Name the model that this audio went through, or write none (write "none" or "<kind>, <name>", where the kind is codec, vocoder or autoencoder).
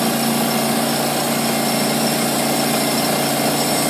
none